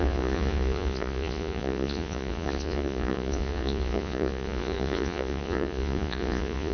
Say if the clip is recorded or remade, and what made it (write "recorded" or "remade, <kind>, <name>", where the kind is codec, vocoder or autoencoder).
remade, vocoder, Vocos